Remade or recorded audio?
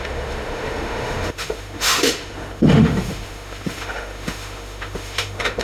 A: remade